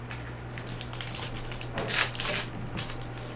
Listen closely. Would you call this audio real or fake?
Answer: real